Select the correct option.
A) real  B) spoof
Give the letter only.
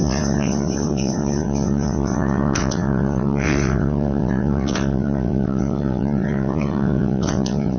B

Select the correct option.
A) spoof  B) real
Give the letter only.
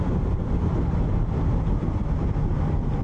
B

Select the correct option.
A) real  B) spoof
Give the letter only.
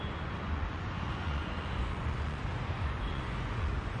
B